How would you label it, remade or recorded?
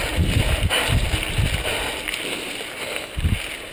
recorded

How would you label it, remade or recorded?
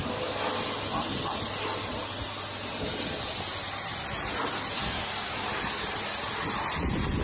recorded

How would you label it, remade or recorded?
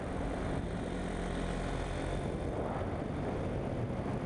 recorded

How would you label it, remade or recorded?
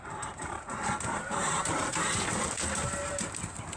remade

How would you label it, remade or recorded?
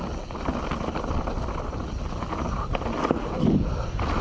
recorded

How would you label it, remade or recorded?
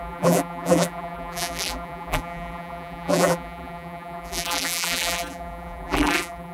remade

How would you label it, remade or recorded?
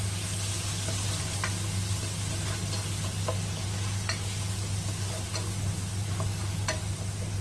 recorded